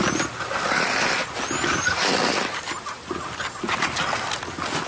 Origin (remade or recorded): recorded